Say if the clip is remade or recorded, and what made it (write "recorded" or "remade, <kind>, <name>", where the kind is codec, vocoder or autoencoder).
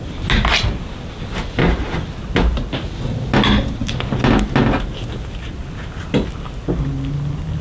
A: recorded